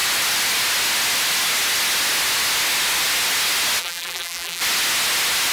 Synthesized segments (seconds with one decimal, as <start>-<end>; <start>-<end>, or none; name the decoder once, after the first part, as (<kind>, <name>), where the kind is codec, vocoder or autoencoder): 3.8-4.6 (vocoder, BigVGAN v2)